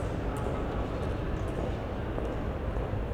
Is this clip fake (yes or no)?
no